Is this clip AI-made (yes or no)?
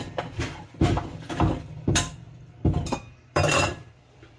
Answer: yes